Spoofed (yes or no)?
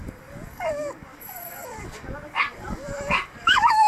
yes